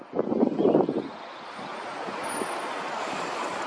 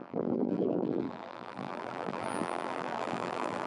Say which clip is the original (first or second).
first